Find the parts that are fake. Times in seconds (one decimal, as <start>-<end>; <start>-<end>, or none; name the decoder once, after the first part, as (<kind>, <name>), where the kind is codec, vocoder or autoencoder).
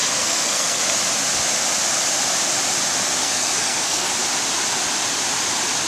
0.0-0.8 (codec, SNAC); 3.2-4.1